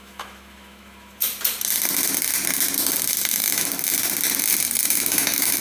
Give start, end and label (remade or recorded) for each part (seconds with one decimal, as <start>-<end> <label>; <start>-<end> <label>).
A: 0.0-1.2 remade; 1.2-3.3 recorded; 3.3-3.7 remade; 3.7-4.9 recorded; 4.9-5.6 remade